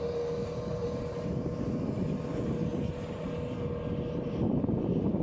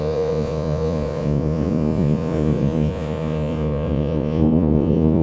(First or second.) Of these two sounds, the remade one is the second